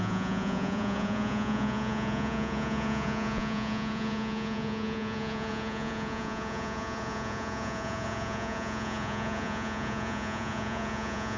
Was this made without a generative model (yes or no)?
no